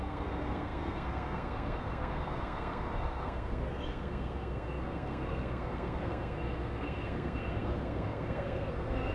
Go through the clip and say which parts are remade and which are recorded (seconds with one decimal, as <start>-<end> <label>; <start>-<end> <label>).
0.0-9.1 remade